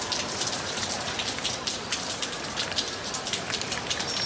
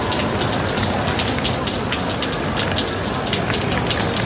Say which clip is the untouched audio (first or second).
second